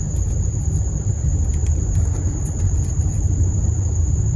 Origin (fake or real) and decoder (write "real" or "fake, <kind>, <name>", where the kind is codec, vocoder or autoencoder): fake, vocoder, BigVGAN v2